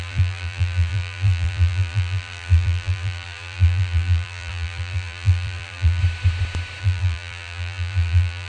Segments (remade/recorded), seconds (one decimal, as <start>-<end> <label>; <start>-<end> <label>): 0.0-6.0 remade; 6.0-6.8 recorded; 6.8-8.5 remade